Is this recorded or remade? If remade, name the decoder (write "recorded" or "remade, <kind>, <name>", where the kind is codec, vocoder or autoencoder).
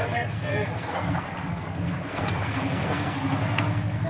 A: remade, codec, SNAC